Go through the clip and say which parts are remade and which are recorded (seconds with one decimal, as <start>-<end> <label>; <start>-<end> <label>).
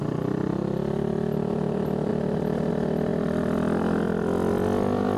0.0-5.2 recorded